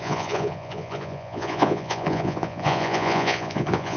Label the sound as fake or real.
fake